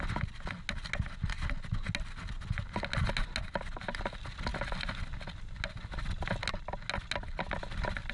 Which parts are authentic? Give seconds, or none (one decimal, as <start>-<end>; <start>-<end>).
0.0-8.1